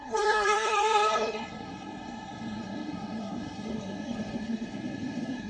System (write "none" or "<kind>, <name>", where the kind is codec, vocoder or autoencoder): codec, SNAC